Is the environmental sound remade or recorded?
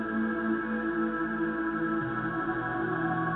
recorded